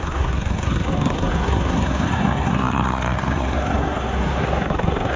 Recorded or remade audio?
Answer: remade